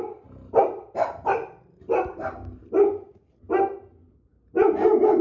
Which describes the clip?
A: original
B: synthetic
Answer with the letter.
A